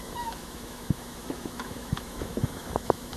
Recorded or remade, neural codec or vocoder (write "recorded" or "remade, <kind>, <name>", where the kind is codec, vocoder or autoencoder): remade, autoencoder, DAC-VAE